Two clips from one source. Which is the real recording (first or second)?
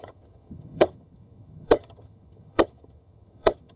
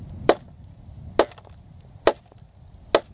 second